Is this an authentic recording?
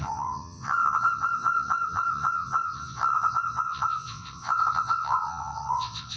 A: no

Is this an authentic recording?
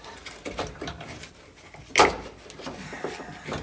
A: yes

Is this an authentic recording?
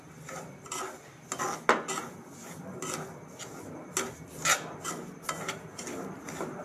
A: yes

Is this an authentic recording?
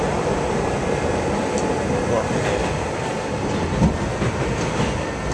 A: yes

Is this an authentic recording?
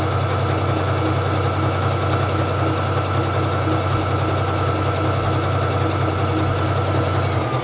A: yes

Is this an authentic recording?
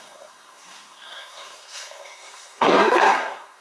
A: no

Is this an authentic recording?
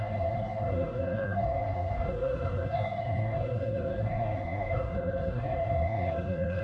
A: no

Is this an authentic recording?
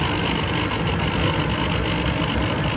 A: yes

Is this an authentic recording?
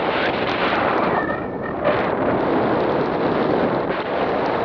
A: yes